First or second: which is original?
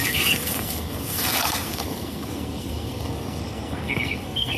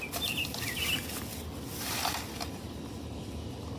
second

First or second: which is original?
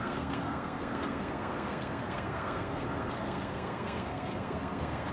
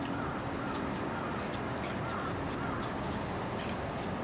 second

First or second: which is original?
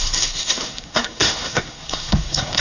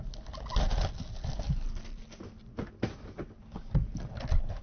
second